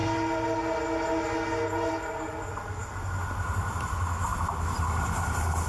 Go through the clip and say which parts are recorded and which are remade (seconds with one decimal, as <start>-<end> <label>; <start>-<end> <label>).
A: 0.0-5.7 recorded